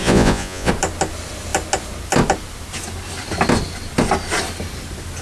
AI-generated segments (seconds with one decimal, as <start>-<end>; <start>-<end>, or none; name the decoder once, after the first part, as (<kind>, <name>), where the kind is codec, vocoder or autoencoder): 0.0-0.7 (vocoder, Vocos)